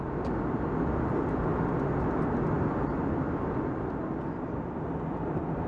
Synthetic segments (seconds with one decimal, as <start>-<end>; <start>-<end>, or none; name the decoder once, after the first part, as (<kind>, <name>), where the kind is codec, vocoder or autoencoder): none